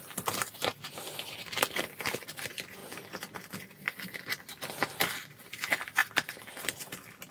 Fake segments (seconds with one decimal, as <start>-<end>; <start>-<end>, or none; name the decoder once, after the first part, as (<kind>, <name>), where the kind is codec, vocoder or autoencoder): 2.8-4.4 (vocoder, BigVGAN v2); 6.0-6.8